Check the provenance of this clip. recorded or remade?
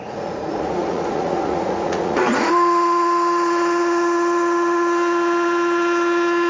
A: remade